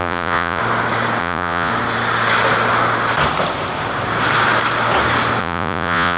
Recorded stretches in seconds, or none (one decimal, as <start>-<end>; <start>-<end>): 0.6-1.2; 1.7-5.4